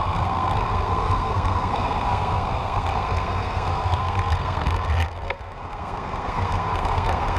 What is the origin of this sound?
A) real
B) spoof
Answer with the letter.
B